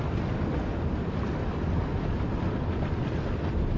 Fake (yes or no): no